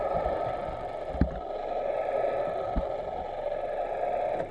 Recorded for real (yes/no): yes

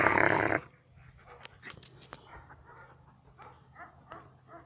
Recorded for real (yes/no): yes